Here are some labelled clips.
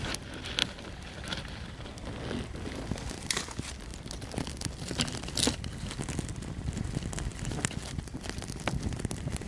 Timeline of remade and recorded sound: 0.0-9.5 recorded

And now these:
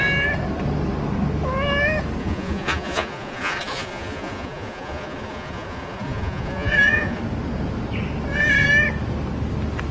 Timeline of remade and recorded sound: 0.0-2.2 recorded; 2.2-7.2 remade; 7.2-9.9 recorded

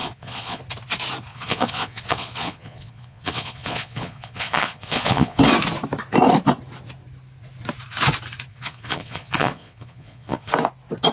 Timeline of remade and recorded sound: 0.0-0.6 remade; 0.6-1.3 recorded; 1.3-5.4 remade; 5.4-8.5 recorded; 8.5-10.5 remade; 10.5-11.1 recorded

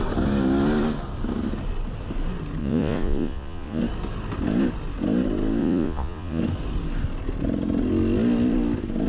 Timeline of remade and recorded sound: 0.0-2.6 recorded; 2.6-3.8 remade; 3.8-5.6 recorded; 5.6-6.4 remade; 6.4-9.1 recorded

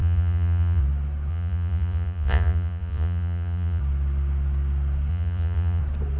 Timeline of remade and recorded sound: 0.0-0.8 remade; 0.8-1.3 recorded; 1.3-3.8 remade; 3.8-5.1 recorded; 5.1-5.8 remade; 5.8-6.2 recorded